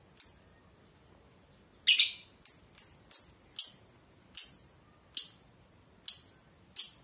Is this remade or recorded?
recorded